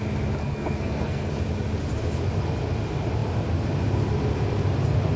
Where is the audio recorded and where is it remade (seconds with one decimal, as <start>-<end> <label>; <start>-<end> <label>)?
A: 0.0-0.4 recorded; 0.4-1.3 remade; 1.3-5.2 recorded